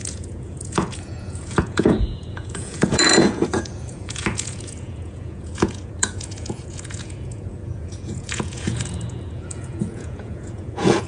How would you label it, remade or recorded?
remade